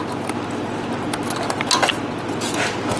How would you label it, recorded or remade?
recorded